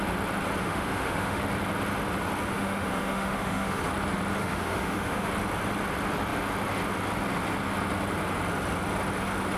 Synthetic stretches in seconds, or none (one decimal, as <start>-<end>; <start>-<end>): 0.6-1.4; 2.5-3.8; 4.4-5.3